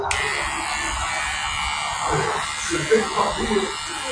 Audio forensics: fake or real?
real